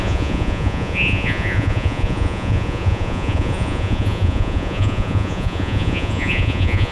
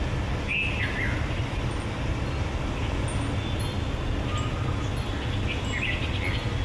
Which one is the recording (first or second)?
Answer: second